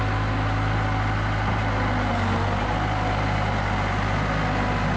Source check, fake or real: real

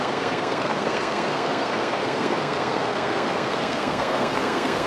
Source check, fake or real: fake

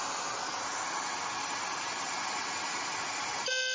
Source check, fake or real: real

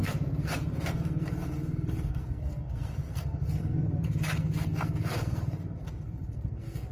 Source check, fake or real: fake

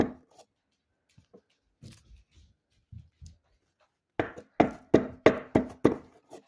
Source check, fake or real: real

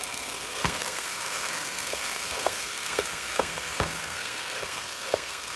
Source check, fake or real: fake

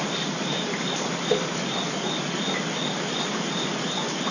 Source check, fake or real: real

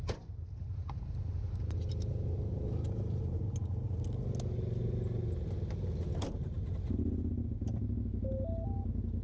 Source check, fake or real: real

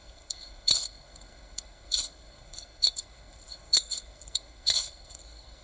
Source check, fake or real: fake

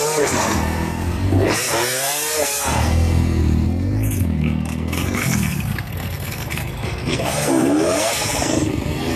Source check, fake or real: fake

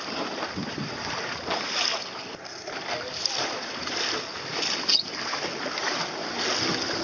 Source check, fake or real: real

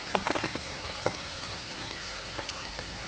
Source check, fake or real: fake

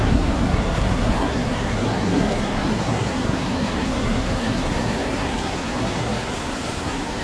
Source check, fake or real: fake